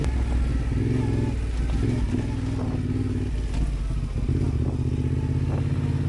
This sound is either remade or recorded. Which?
recorded